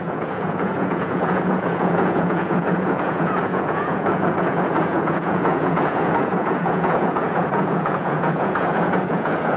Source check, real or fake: fake